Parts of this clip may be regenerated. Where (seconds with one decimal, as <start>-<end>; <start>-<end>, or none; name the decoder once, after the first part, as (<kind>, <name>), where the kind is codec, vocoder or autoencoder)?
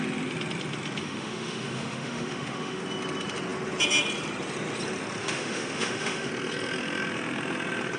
1.0-2.8 (autoencoder, DAC-VAE); 5.2-6.3